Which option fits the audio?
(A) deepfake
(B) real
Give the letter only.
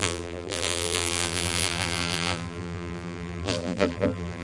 A